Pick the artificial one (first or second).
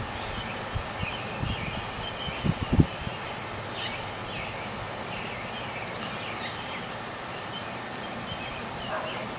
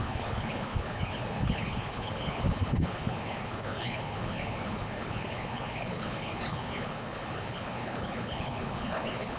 second